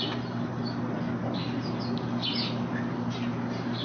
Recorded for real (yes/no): yes